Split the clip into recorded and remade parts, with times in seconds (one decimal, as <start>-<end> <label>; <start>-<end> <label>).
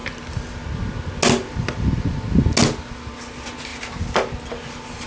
0.0-5.1 recorded